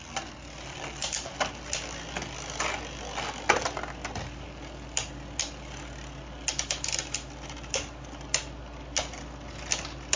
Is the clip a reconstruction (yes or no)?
no